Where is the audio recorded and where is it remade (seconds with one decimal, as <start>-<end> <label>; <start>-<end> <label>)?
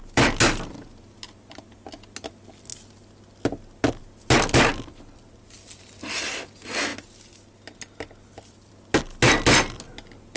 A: 0.0-10.4 recorded